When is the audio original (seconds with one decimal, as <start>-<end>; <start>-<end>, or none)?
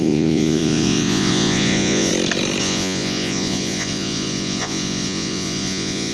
2.1-2.6